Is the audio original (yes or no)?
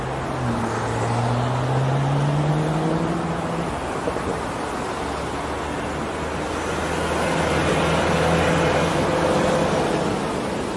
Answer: yes